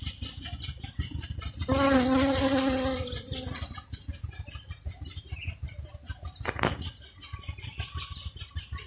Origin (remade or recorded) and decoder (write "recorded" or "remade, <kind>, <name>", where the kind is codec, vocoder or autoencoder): recorded